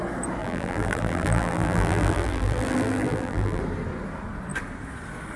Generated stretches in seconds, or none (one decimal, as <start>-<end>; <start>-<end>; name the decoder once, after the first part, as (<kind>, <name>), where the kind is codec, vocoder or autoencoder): 0.4-3.6 (vocoder, BigVGAN v2)